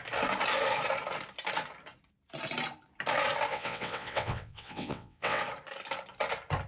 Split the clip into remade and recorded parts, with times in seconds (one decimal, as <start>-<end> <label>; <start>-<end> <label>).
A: 0.0-3.5 recorded; 3.5-5.4 remade; 5.4-6.7 recorded